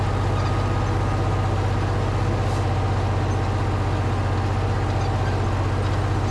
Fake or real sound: real